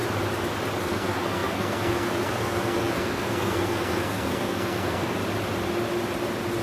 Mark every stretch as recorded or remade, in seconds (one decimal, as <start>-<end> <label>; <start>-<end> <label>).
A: 0.0-0.8 recorded; 0.8-5.2 remade; 5.2-6.6 recorded